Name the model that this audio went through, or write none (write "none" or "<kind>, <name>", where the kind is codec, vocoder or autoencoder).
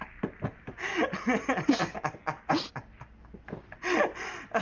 none